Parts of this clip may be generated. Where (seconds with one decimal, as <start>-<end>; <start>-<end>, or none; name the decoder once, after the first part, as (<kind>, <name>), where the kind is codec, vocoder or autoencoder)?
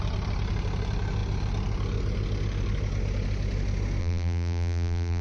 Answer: 4.0-5.2 (vocoder, BigVGAN v2)